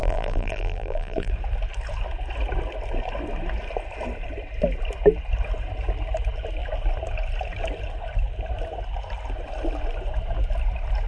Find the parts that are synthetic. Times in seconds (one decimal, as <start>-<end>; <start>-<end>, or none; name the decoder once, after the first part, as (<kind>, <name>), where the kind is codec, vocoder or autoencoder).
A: 0.0-1.3 (vocoder, BigVGAN v2)